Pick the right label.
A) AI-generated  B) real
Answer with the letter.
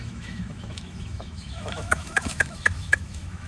A